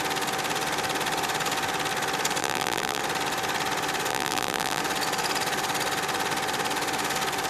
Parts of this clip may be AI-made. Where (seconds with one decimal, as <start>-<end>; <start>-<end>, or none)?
2.4-3.0; 4.1-4.8